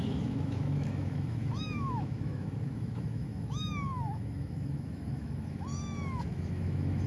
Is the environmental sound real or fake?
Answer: fake